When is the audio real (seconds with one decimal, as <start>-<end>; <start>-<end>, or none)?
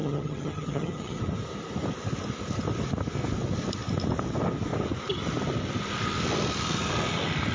1.2-7.5